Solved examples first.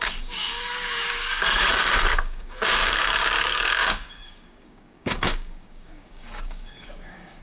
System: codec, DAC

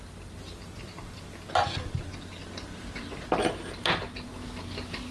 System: none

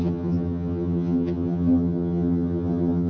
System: vocoder, HiFi-GAN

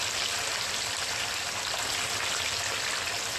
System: none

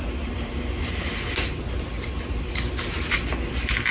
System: none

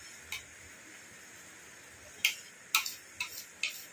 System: none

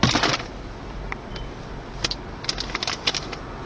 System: none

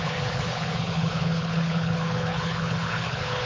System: codec, HILCodec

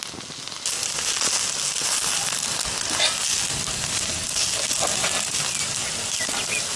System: none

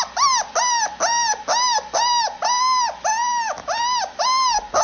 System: none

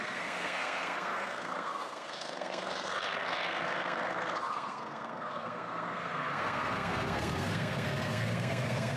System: codec, SNAC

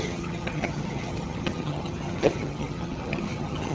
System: vocoder, HiFi-GAN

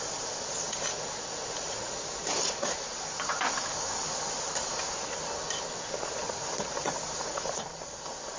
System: none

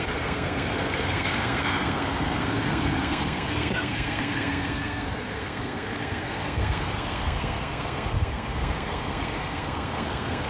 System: codec, SNAC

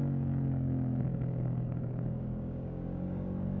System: codec, DAC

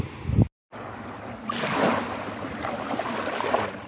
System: none